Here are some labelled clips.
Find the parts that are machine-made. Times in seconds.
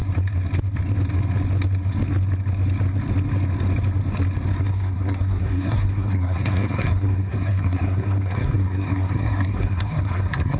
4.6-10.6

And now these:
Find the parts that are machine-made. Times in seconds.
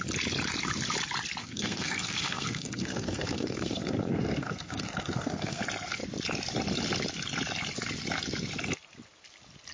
1.4-5.6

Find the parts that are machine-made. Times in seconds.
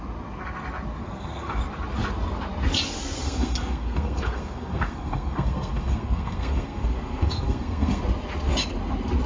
1.0-1.6; 3.2-8.0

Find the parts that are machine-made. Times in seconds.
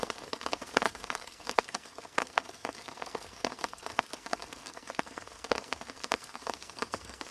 0.0-7.3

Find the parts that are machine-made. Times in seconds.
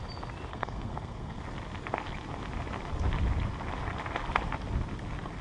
0.5-1.4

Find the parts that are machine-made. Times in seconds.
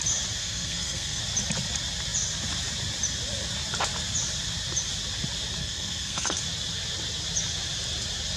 0.4-1.2; 5.6-6.4